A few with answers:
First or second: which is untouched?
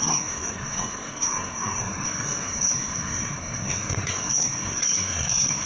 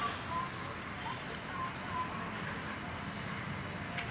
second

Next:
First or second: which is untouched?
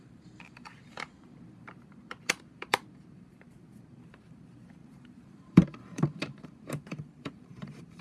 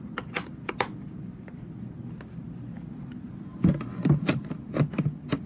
second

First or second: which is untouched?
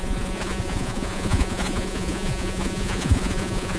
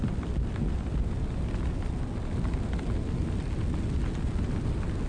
second